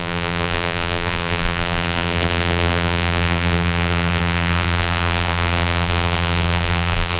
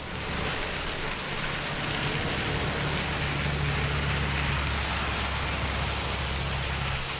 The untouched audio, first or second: second